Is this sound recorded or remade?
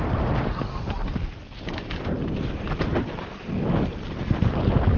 recorded